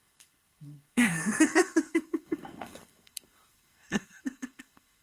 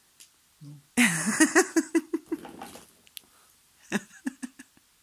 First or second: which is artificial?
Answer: first